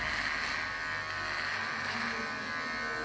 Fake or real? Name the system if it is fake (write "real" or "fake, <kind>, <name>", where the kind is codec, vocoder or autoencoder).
real